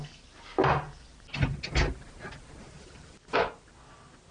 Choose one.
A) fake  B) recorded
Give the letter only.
B